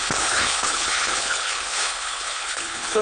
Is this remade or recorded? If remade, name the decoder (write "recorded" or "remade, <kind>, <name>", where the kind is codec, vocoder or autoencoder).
remade, codec, HILCodec